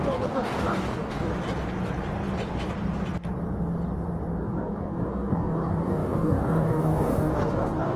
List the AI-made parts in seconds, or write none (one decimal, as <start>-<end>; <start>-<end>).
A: 0.0-1.3; 4.4-8.0